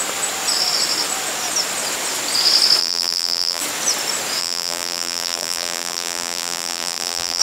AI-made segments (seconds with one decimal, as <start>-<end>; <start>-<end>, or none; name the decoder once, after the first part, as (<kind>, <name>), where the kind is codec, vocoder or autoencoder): 2.8-3.6 (vocoder, BigVGAN v2); 4.4-7.4